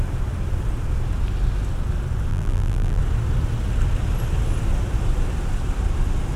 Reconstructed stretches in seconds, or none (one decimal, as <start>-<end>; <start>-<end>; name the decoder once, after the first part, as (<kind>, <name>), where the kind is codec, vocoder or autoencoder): 2.3-3.0 (vocoder, BigVGAN v2)